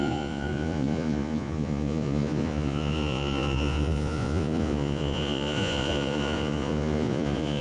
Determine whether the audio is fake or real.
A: fake